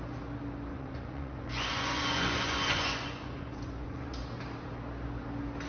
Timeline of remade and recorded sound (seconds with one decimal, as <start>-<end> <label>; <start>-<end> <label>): 0.0-0.7 recorded; 0.7-4.1 remade; 4.1-5.7 recorded